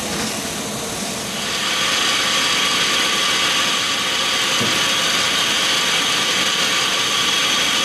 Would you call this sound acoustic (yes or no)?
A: yes